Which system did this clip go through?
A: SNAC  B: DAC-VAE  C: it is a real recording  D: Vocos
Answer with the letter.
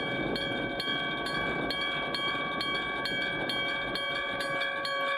C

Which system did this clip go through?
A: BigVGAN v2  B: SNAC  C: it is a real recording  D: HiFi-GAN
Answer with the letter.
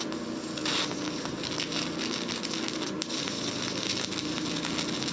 C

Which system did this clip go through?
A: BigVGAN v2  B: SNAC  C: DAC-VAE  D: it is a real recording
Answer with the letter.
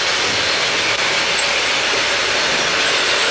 D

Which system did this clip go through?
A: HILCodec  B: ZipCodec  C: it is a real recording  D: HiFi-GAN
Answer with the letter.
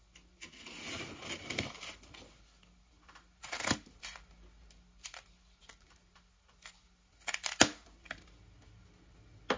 C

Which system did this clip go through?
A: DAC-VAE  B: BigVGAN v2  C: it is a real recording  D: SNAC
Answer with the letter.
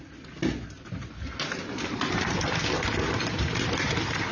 C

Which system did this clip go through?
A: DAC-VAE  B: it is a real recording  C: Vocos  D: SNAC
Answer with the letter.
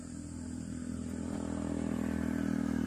B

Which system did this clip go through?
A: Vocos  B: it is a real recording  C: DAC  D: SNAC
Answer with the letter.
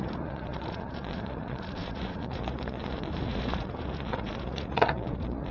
A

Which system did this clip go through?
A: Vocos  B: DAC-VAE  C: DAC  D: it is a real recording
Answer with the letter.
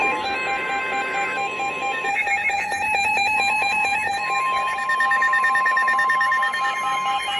B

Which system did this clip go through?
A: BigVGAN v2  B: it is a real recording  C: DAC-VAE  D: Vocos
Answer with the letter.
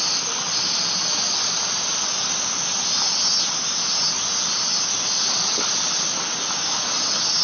B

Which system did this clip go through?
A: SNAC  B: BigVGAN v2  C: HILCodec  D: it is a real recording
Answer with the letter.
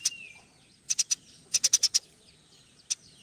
D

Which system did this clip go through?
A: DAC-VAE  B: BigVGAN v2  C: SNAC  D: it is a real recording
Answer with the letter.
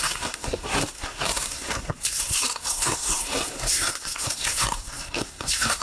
C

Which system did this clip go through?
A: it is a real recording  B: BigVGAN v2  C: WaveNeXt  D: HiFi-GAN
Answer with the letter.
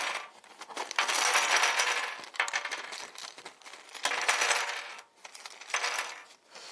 B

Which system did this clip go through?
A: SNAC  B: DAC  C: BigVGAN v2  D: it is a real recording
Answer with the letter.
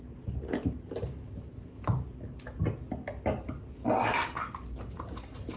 D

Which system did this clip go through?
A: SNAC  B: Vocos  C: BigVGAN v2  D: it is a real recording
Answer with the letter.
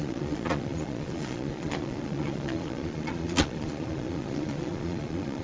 B